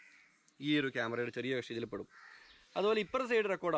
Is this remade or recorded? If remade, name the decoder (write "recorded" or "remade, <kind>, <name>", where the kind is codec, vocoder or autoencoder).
recorded